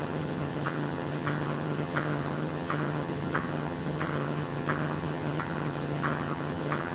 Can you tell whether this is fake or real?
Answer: fake